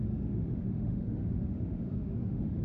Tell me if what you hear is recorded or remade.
remade